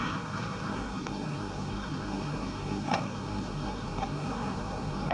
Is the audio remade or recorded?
remade